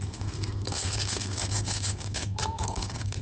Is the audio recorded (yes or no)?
no